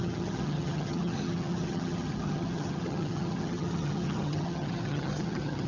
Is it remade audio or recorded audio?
remade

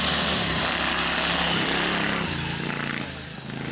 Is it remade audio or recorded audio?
recorded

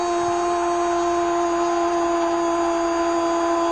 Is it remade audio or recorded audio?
recorded